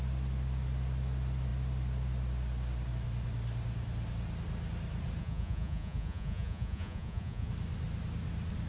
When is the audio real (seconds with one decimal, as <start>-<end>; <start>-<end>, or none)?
0.0-5.2; 7.5-8.7